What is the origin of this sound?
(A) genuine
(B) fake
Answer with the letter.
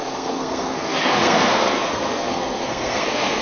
B